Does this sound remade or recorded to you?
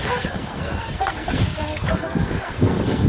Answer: remade